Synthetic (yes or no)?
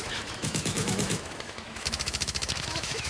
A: yes